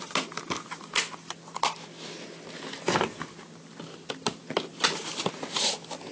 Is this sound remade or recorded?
recorded